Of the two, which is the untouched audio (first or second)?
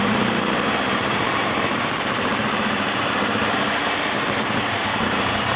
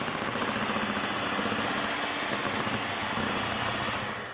second